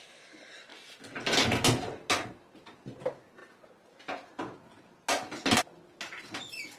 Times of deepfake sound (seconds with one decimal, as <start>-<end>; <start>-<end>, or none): none